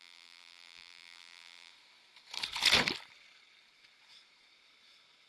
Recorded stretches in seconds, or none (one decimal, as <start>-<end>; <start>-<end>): 1.7-5.3